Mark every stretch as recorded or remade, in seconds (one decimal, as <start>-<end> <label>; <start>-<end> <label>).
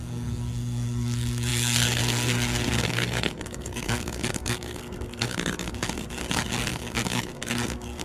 0.0-8.0 remade